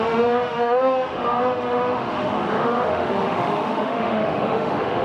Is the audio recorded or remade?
remade